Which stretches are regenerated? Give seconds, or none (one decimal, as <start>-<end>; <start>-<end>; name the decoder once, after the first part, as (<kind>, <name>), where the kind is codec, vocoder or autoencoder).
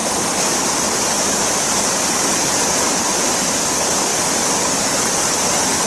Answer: none